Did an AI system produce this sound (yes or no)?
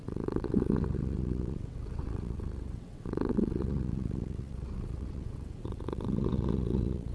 yes